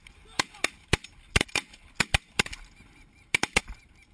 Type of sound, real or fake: real